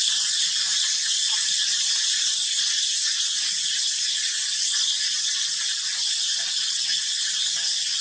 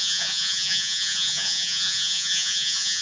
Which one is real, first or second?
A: first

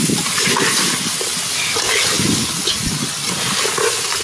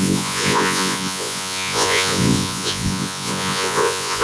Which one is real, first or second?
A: first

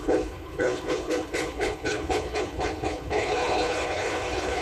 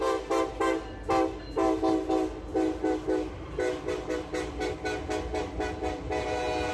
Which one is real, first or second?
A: second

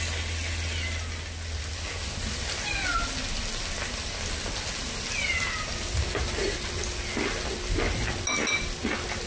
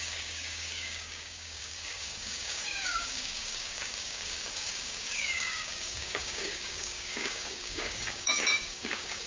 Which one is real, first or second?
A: first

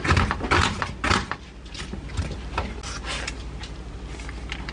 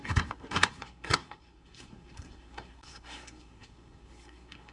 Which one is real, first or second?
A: first